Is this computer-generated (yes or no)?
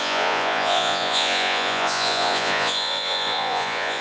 yes